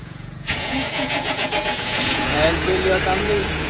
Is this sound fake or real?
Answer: fake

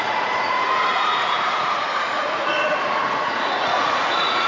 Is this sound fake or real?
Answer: fake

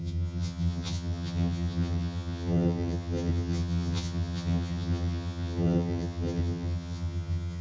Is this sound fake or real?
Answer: fake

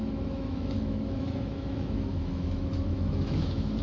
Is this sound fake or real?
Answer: fake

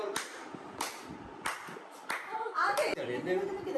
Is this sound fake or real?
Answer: fake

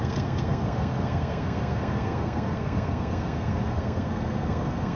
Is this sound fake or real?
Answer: fake